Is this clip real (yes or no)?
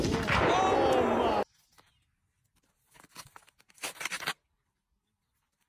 yes